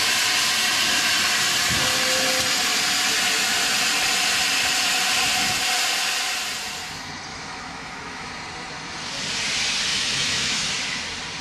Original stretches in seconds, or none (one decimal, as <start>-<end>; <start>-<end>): 0.0-7.3; 8.3-9.9; 10.7-11.4